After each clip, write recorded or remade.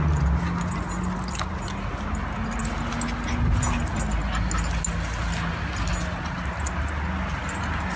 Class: recorded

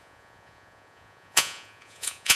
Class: remade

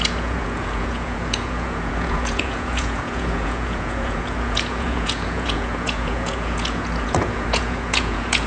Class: remade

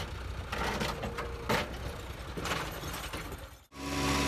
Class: recorded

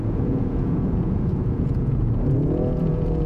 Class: remade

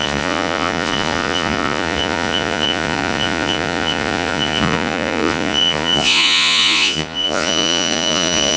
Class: remade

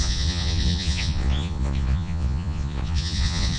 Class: remade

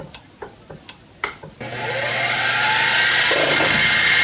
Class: recorded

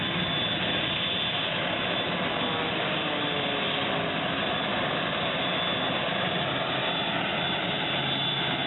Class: recorded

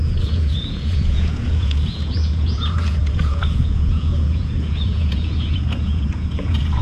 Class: remade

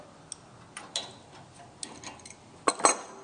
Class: recorded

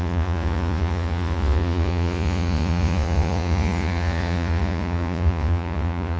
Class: remade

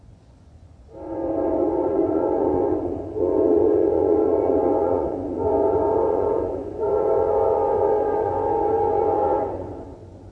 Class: remade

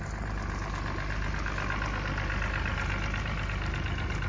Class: recorded